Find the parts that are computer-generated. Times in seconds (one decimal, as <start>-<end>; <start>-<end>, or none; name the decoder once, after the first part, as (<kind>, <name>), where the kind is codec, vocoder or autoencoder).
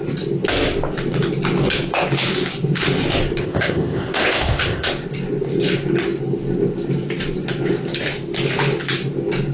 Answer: 3.4-4.9 (codec, ZipCodec)